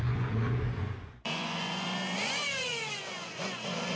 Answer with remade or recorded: remade